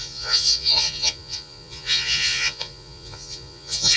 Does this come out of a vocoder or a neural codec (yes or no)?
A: yes